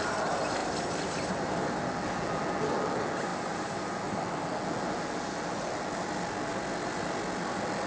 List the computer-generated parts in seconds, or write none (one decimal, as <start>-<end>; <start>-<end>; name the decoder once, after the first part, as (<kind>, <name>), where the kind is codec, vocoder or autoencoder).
none